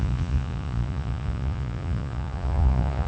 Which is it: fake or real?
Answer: fake